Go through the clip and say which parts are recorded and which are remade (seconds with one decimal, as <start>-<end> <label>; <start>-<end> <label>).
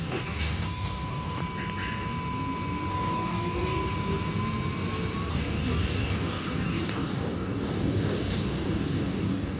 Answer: 0.0-1.4 remade; 1.4-2.9 recorded; 2.9-3.8 remade; 3.8-5.3 recorded; 5.3-9.6 remade